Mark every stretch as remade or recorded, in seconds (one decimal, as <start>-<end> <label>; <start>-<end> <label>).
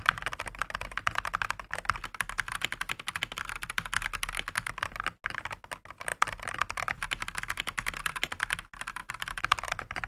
0.0-6.1 recorded; 6.1-6.8 remade; 6.8-9.0 recorded; 9.0-10.1 remade